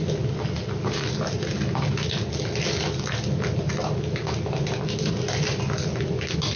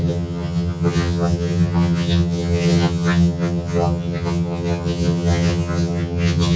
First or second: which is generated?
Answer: second